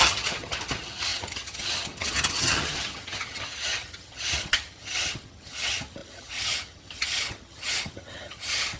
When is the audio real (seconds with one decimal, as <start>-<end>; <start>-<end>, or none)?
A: none